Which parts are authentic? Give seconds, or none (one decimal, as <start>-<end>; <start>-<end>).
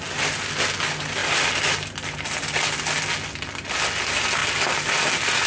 0.0-5.5